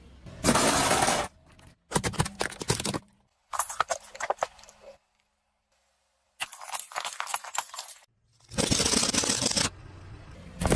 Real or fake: real